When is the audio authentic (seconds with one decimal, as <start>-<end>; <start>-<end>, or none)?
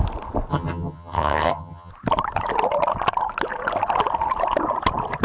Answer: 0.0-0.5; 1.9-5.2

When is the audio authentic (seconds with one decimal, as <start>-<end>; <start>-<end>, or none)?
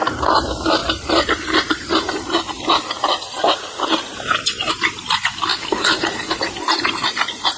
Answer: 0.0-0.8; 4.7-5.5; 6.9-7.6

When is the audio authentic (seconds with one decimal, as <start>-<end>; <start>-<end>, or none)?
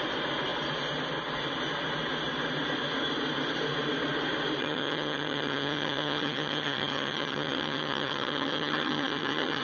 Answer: 0.0-4.6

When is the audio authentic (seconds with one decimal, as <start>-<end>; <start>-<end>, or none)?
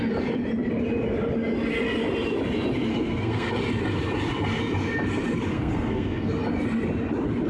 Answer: 0.0-2.9; 3.5-5.5; 6.3-7.5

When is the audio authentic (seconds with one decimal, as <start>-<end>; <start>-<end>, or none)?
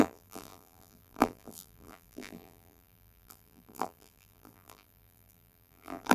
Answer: none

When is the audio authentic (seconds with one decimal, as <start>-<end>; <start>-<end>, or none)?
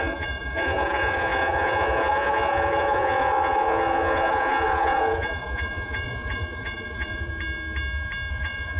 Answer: 7.3-8.3